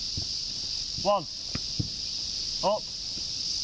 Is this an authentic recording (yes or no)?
yes